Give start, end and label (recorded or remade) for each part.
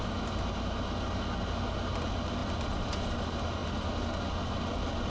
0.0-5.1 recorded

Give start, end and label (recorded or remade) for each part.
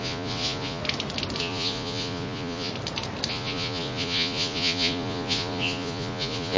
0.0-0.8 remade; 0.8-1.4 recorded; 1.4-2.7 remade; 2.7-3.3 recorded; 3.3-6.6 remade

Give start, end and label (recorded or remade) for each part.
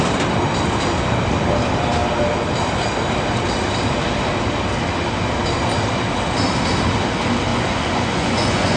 0.0-7.5 recorded; 7.5-8.8 remade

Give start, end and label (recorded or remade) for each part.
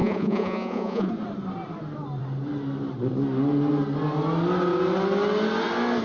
0.0-1.1 remade; 1.1-6.0 recorded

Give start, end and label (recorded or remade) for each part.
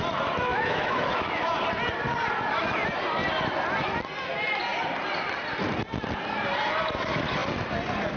0.0-0.5 recorded; 0.5-1.5 remade; 1.5-8.2 recorded